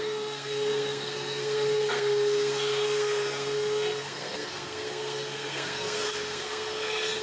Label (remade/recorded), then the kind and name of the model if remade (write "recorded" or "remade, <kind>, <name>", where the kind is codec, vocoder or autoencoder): remade, codec, SNAC